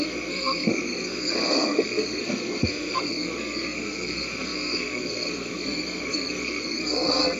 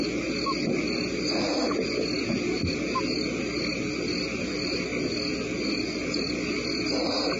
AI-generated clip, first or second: first